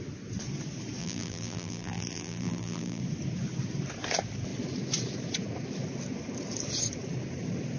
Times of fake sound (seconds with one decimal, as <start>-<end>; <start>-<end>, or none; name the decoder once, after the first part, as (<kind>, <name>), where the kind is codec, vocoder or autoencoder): 1.0-3.0 (vocoder, BigVGAN v2)